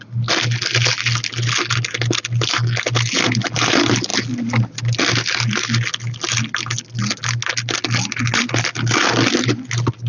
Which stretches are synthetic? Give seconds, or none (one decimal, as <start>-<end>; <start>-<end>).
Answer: none